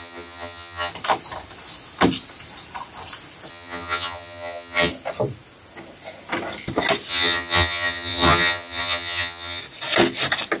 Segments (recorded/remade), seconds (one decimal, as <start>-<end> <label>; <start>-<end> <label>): 0.0-0.9 remade; 0.9-3.5 recorded; 3.5-4.9 remade; 4.9-7.1 recorded; 7.1-9.6 remade; 9.6-10.6 recorded